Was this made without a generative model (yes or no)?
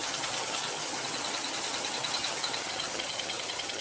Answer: no